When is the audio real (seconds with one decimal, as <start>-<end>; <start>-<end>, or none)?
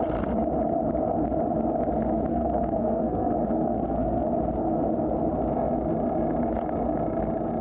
0.0-2.3; 4.3-7.6